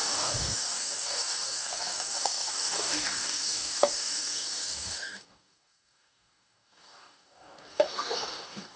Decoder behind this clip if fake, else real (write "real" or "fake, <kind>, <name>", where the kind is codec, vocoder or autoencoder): fake, codec, DAC